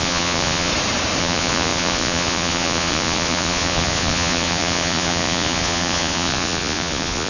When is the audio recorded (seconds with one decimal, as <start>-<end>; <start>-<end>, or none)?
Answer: 0.7-1.2